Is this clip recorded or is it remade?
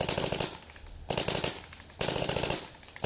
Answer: recorded